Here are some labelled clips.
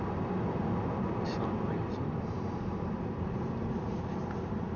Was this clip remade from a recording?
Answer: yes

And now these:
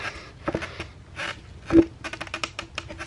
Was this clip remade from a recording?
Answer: no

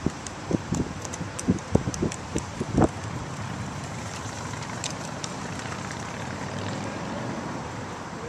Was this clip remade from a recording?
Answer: yes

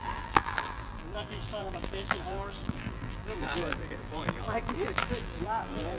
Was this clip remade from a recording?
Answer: yes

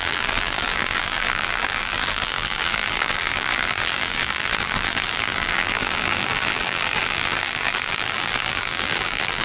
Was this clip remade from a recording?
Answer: yes